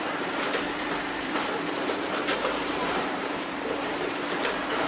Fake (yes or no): yes